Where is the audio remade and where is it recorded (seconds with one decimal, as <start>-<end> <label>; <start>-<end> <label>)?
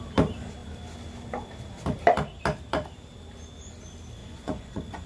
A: 0.0-4.2 recorded; 4.2-5.1 remade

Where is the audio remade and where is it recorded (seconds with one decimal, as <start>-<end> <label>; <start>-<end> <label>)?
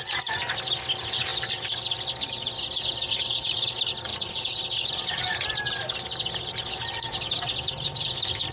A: 0.0-4.1 recorded; 4.1-4.6 remade; 4.6-8.5 recorded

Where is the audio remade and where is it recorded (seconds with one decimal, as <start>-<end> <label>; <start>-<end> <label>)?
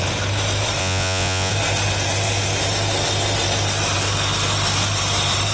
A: 0.0-0.8 recorded; 0.8-1.5 remade; 1.5-5.5 recorded